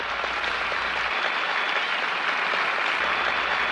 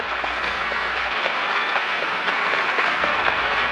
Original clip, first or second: first